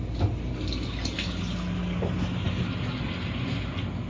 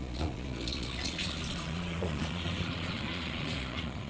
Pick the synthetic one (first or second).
second